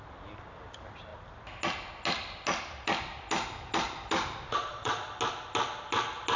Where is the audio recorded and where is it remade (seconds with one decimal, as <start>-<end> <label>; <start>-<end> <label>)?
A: 0.0-4.5 recorded; 4.5-5.2 remade; 5.2-6.4 recorded